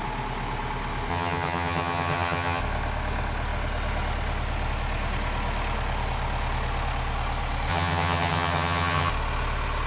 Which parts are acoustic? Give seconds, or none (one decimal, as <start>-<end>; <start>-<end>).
0.0-1.1; 2.6-7.7; 9.1-9.9